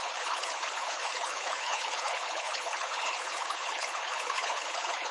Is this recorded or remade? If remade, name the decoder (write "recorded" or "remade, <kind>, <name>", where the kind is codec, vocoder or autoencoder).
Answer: remade, codec, HILCodec